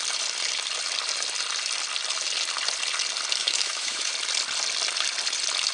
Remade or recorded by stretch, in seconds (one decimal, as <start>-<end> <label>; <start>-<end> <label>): 0.0-3.4 recorded; 3.4-4.1 remade; 4.1-5.7 recorded